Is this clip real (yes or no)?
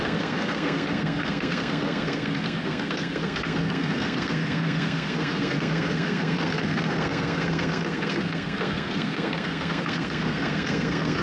no